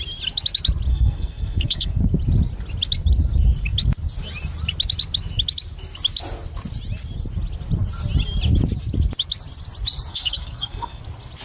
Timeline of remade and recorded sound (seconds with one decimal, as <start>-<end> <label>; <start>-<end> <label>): 0.0-0.9 recorded; 0.9-2.0 remade; 2.0-10.1 recorded; 10.1-11.0 remade; 11.0-11.4 recorded